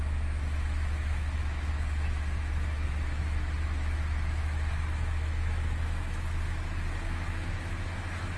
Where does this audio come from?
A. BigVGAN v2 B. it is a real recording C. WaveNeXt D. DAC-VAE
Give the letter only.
D